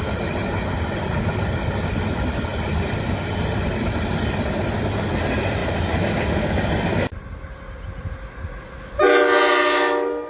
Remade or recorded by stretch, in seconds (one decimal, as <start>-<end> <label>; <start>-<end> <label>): 0.0-10.3 recorded